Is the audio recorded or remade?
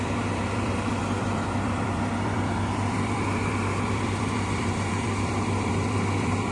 remade